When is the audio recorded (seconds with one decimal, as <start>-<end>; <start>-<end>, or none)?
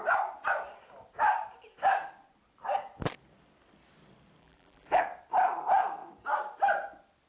0.0-4.4; 5.0-7.3